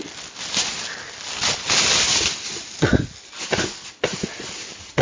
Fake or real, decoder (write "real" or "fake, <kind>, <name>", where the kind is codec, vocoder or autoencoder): real